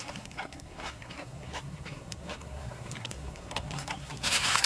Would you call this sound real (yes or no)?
no